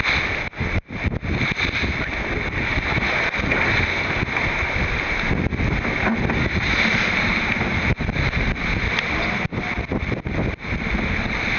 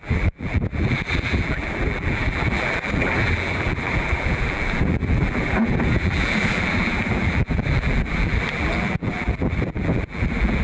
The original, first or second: first